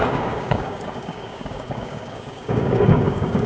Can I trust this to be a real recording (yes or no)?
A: no